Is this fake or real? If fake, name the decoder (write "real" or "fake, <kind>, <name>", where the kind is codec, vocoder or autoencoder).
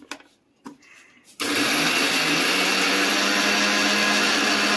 real